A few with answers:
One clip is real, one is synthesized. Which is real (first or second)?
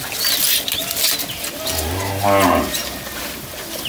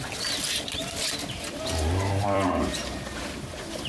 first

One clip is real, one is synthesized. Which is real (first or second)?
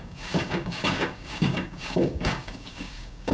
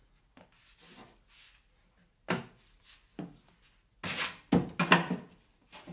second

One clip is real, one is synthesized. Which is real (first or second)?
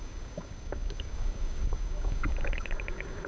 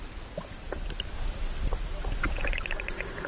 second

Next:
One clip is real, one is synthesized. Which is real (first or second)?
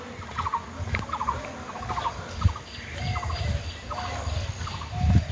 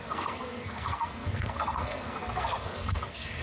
first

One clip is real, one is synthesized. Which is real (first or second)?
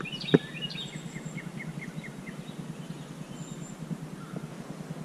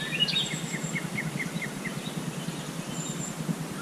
first